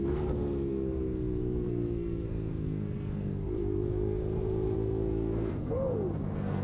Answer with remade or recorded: remade